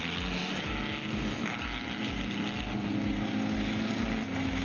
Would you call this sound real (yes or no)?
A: yes